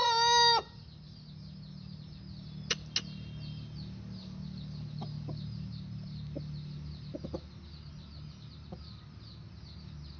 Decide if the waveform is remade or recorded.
recorded